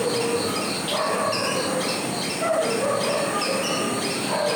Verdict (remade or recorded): recorded